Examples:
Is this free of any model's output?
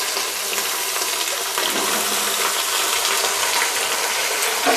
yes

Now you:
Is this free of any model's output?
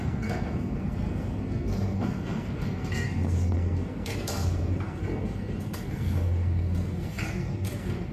no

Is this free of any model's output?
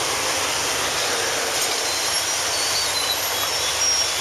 yes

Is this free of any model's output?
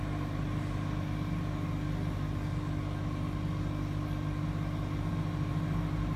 yes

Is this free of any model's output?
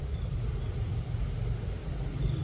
yes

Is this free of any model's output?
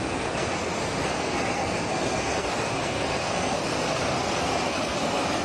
no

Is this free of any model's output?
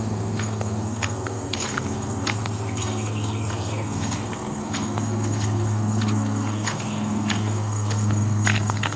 no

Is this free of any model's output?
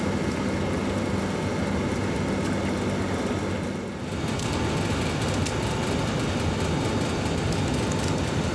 yes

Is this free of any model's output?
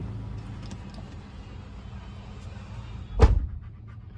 yes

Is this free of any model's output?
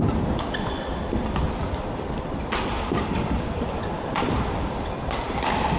yes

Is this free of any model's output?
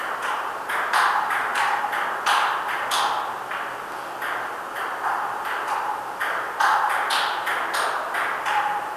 yes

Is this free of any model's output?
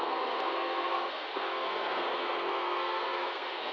no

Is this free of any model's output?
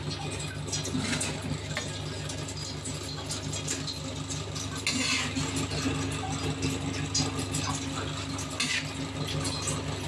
yes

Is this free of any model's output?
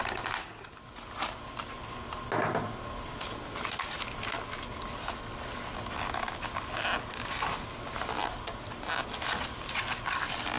yes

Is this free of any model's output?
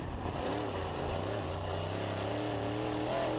yes